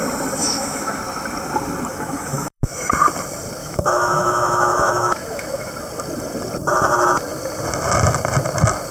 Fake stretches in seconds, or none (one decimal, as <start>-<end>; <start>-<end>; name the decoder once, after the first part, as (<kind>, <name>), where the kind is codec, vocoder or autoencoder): 0.4-1.0 (autoencoder, DAC-VAE); 1.9-2.9; 3.6-5.7